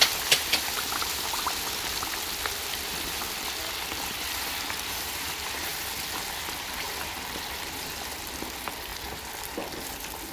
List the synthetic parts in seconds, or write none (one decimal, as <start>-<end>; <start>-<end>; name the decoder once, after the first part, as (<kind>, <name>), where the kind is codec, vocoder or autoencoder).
0.0-8.9 (vocoder, BigVGAN v2); 9.6-10.3